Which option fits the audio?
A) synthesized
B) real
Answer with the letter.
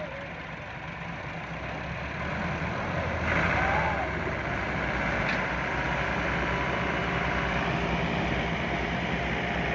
B